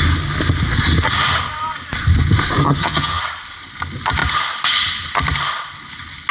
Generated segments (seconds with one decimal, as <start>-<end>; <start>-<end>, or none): 2.6-3.2